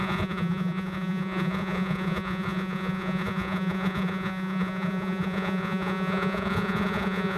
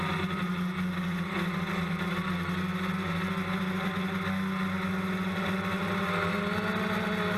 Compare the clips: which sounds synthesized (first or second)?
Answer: first